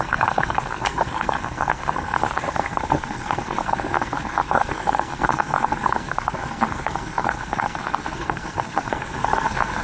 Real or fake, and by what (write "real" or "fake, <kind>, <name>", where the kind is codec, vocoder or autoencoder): fake, codec, SNAC